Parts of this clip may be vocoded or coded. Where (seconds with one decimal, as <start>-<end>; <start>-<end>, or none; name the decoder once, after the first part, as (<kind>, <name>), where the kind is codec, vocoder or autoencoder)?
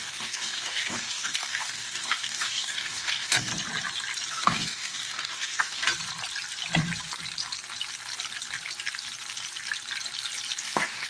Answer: 0.0-3.5 (codec, DAC); 4.3-5.9; 10.6-11.1